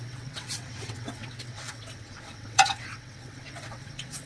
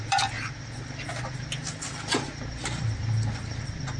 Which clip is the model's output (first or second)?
first